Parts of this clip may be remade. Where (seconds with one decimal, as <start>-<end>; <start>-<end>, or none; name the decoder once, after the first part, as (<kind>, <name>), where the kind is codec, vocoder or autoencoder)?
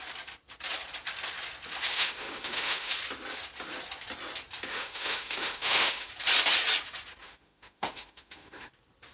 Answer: 1.9-2.9 (autoencoder, DAC-VAE); 4.7-6.1; 7.2-8.7